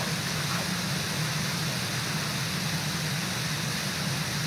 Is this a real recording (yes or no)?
yes